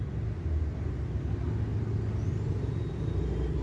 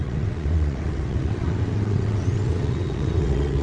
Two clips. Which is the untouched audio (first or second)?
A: first